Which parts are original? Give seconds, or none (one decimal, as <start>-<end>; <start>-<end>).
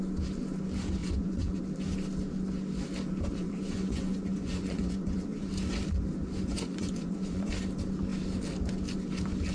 0.0-1.0; 1.6-3.3; 5.5-6.5; 7.5-9.5